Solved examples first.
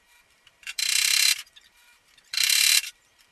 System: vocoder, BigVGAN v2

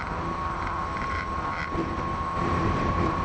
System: vocoder, BigVGAN v2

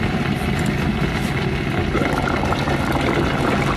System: none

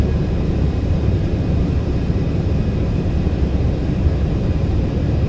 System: vocoder, BigVGAN v2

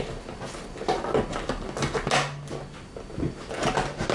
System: none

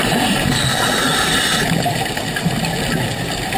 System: none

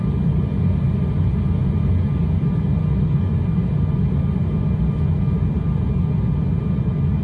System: none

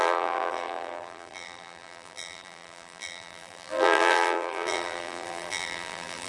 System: vocoder, BigVGAN v2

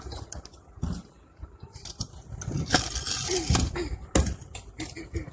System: none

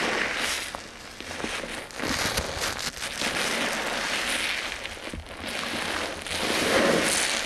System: none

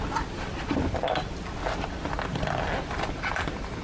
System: none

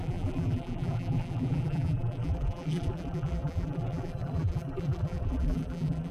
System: vocoder, BigVGAN v2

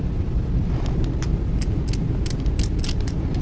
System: none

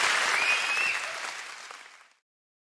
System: none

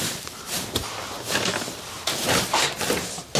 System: vocoder, BigVGAN v2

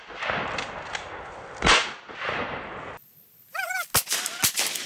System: none